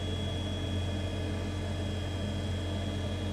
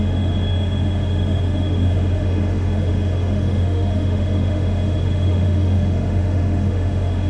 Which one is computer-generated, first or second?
second